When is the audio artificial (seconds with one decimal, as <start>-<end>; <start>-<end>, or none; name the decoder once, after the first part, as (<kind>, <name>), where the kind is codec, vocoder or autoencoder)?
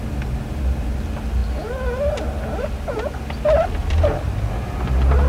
none